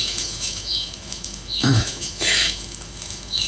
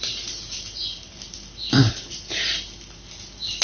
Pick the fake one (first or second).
first